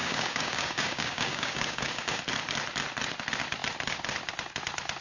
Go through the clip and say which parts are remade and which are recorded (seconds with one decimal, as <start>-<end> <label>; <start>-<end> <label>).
0.0-2.2 remade; 2.2-5.0 recorded